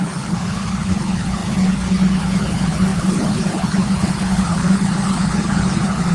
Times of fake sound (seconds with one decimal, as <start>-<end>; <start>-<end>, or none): 0.0-6.1